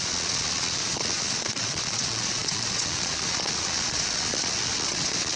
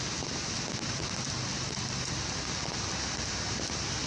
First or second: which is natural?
second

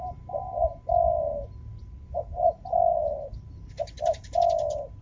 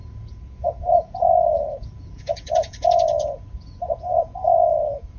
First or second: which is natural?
first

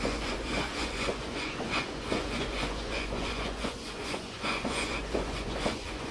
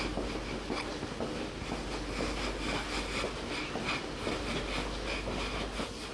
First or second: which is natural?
second